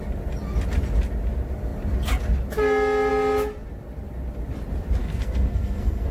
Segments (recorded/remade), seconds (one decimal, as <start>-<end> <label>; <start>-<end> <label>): 0.0-5.0 recorded; 5.0-6.1 remade